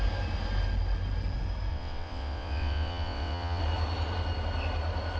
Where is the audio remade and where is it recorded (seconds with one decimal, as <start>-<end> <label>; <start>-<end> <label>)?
0.0-1.7 recorded; 1.7-3.6 remade; 3.6-5.2 recorded